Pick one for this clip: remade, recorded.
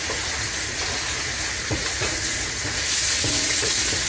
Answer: remade